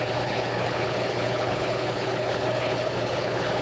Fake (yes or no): yes